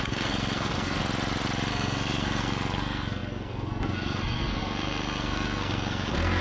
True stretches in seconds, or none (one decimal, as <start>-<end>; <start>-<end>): 1.0-1.7